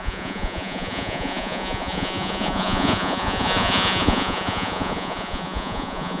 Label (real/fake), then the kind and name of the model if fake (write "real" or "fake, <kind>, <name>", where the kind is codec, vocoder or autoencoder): fake, vocoder, Vocos